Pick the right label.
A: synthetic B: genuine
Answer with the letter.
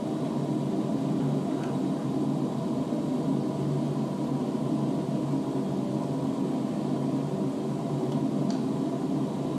A